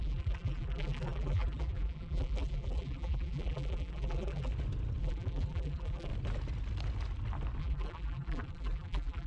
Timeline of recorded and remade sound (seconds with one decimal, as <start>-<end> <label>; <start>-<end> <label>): 0.0-4.5 remade; 4.5-5.0 recorded; 5.0-6.1 remade; 6.1-7.6 recorded; 7.6-9.3 remade